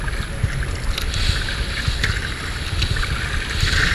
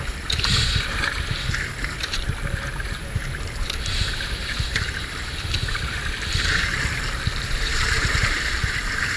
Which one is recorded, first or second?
first